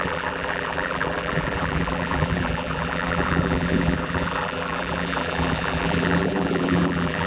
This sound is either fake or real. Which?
fake